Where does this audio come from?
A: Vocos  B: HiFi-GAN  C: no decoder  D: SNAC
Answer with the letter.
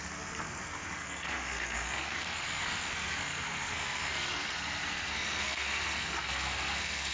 D